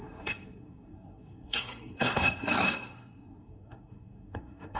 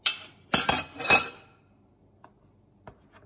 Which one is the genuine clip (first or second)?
second